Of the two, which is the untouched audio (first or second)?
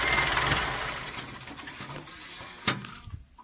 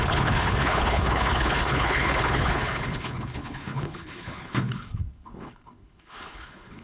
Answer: first